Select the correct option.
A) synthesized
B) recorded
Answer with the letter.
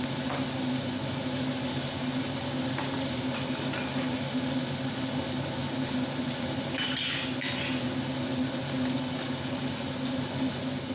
B